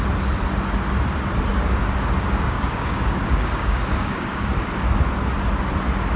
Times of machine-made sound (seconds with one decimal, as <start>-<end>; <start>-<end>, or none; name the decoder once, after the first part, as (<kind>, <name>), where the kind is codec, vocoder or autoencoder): 1.5-4.5 (codec, DAC)